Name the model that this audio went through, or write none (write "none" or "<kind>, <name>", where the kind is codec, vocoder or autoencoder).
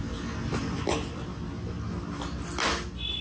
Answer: none